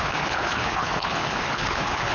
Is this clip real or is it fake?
fake